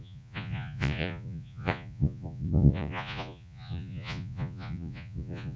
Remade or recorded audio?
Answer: remade